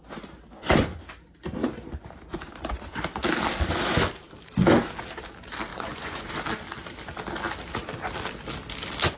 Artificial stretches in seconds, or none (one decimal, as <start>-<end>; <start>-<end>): 5.7-6.3